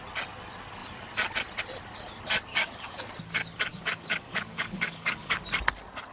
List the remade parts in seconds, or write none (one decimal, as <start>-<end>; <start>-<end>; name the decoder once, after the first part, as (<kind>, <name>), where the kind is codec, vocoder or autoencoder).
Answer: 2.5-3.1 (codec, DAC); 3.7-5.4

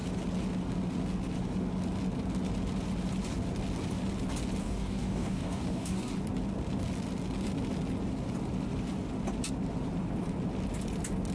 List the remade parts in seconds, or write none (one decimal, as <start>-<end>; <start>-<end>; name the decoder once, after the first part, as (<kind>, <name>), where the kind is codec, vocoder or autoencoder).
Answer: 4.6-6.1 (codec, DAC)

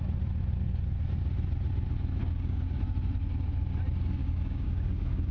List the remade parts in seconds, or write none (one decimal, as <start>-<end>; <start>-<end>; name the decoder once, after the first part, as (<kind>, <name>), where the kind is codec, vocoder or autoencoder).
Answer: 2.2-2.8 (codec, DAC); 4.2-5.3